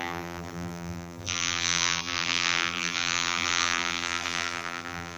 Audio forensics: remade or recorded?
remade